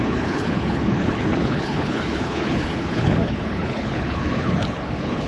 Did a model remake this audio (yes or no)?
yes